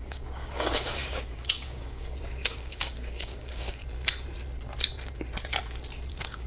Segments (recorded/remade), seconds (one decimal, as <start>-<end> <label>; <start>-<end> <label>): 0.0-3.8 remade; 3.8-6.1 recorded; 6.1-6.5 remade